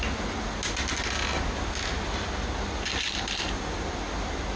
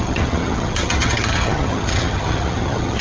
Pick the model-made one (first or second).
second